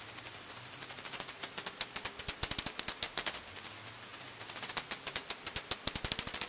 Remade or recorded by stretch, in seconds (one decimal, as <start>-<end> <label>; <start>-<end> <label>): 0.0-6.5 recorded